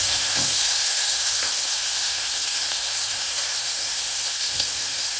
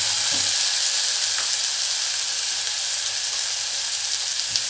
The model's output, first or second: first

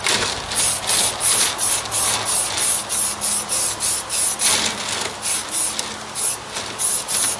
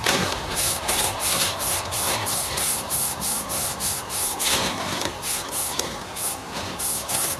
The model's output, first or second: second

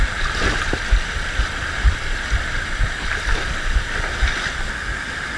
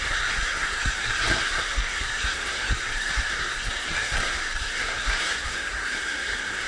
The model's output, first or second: second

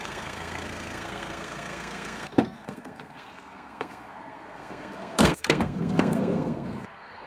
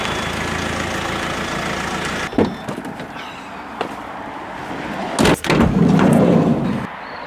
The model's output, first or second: first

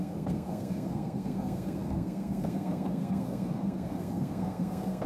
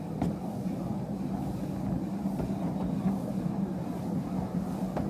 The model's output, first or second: first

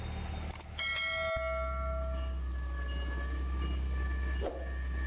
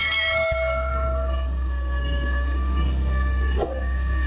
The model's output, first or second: second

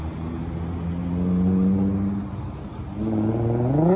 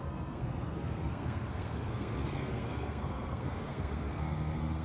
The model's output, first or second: second